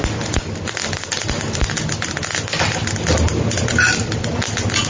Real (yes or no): yes